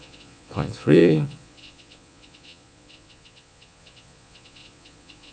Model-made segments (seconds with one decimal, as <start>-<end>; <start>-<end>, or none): 0.0-5.3